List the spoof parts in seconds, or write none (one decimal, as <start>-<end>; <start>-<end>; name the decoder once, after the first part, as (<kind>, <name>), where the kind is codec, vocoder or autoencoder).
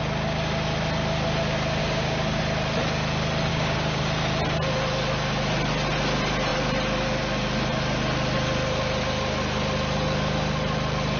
1.8-2.4 (codec, DAC); 3.5-4.0